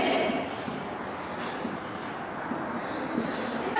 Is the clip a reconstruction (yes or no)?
no